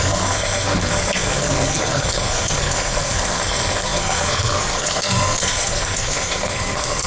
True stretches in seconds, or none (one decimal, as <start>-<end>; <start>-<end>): none